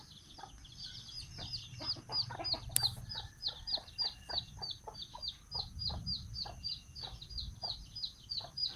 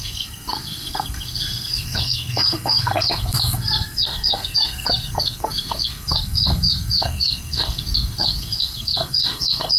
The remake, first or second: second